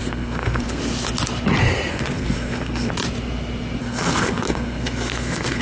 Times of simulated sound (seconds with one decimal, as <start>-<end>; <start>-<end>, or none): 0.0-0.8; 1.9-2.9; 3.8-5.6